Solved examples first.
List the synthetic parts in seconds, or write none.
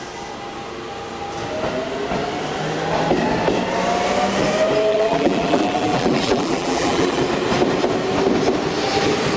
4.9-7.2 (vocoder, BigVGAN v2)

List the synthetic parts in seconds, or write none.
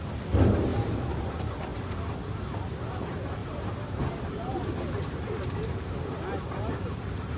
0.7-1.2 (vocoder, BigVGAN v2); 3.4-6.2